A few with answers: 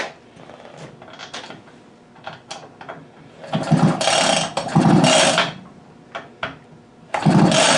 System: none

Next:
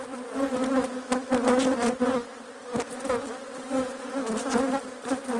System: none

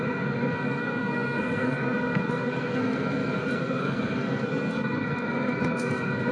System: codec, SNAC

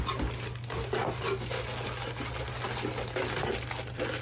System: none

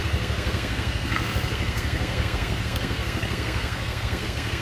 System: codec, SNAC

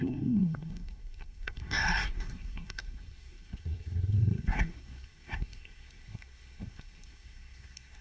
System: codec, SNAC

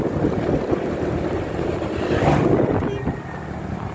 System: none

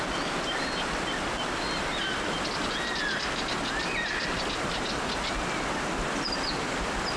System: none